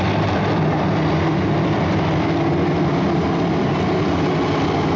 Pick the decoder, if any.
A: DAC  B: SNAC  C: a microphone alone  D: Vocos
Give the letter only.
C